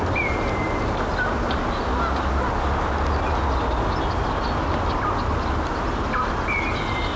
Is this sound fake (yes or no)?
no